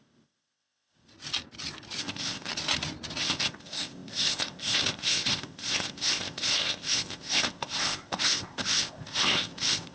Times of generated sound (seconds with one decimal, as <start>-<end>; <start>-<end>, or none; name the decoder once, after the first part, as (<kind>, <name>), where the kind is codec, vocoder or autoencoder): 0.0-1.1 (codec, ZipCodec); 2.0-2.5; 3.2-9.9